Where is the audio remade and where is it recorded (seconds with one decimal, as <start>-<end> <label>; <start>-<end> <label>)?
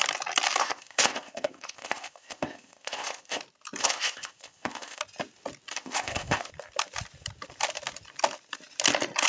0.0-0.6 recorded; 0.6-3.4 remade; 3.4-3.8 recorded; 3.8-5.0 remade; 5.0-5.7 recorded; 5.7-6.5 remade; 6.5-9.3 recorded